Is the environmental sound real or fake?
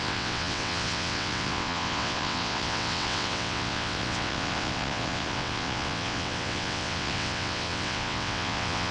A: fake